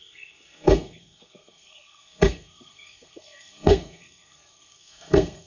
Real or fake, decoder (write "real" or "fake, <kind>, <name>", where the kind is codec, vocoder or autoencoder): fake, codec, SNAC